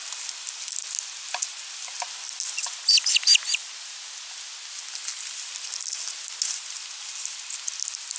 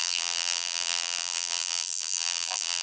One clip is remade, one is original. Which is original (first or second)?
first